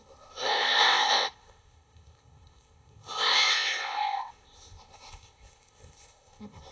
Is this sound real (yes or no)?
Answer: no